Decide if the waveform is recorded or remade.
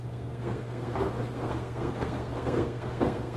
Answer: remade